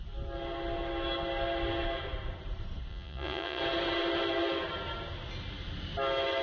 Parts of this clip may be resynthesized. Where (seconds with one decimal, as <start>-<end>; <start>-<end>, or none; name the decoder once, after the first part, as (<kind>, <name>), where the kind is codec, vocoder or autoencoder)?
2.9-3.6 (vocoder, Vocos)